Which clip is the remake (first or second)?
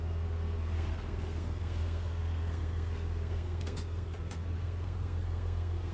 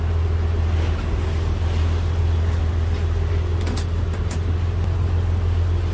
first